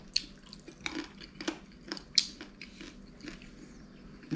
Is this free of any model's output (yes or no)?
yes